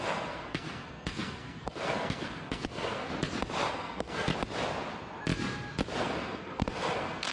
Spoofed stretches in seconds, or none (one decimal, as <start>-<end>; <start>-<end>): 0.0-3.1; 3.7-4.3; 6.0-7.3